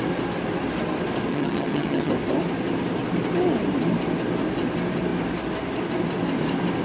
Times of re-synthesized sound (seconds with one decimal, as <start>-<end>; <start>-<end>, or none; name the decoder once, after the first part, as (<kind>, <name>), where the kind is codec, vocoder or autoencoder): 1.3-2.1 (vocoder, HiFi-GAN)